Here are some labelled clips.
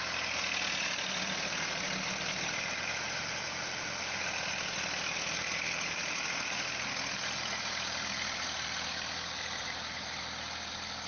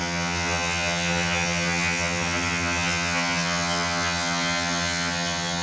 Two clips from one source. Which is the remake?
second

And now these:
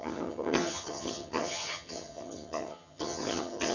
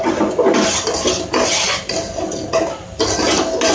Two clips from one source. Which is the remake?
first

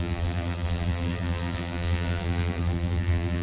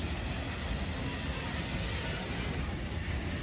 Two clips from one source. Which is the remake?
first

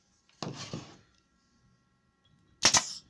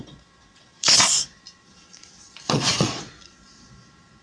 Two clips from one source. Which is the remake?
second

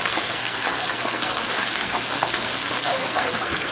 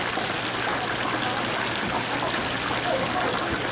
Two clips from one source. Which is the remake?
first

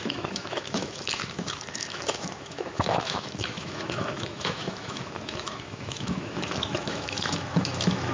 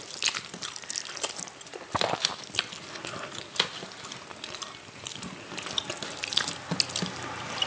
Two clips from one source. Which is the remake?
first